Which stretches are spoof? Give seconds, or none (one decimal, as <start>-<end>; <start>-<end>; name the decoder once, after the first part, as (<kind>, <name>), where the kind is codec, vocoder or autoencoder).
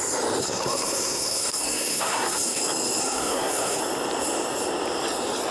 0.4-2.6 (codec, SNAC); 3.0-3.8